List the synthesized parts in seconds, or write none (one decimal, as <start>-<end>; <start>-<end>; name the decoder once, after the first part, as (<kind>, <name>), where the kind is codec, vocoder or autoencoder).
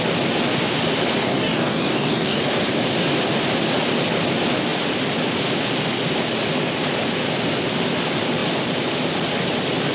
1.2-2.4 (codec, DAC)